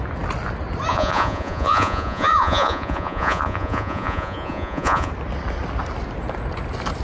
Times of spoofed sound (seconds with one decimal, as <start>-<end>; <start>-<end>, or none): 0.9-5.1